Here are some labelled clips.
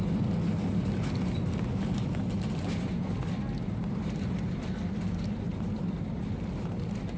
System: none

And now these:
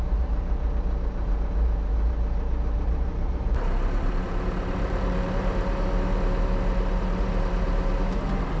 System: vocoder, BigVGAN v2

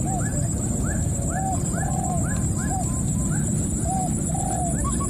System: vocoder, BigVGAN v2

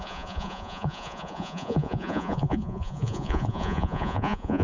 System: vocoder, Vocos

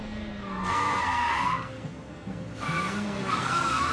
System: codec, SNAC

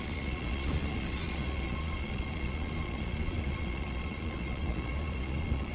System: vocoder, Vocos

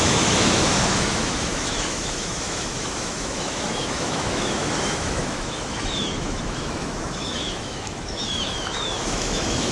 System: autoencoder, DAC-VAE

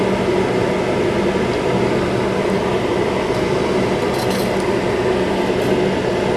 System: none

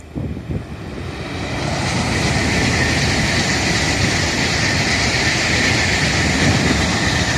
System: none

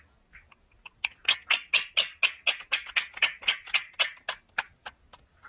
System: none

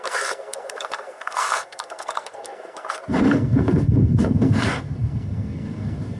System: codec, SNAC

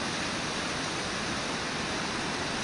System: none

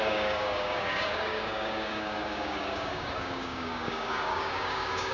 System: codec, DAC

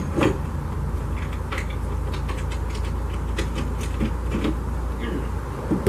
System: none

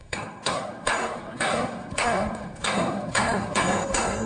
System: codec, SNAC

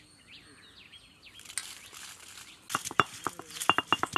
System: none